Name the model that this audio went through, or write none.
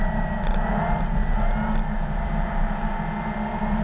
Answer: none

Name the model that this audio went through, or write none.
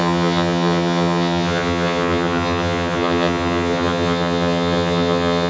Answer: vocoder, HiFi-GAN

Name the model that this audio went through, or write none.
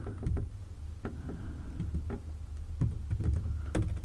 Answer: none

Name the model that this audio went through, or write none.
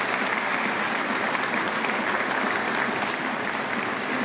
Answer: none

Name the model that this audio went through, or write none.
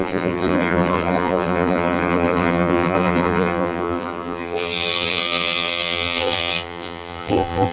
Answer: vocoder, BigVGAN v2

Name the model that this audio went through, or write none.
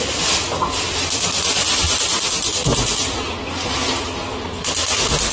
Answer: none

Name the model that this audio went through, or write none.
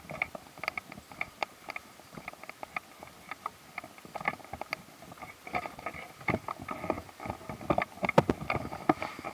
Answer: none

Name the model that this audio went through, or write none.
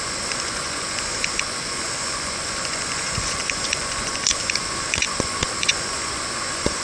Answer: vocoder, Vocos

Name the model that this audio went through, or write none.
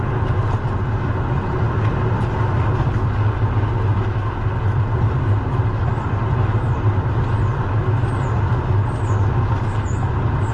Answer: none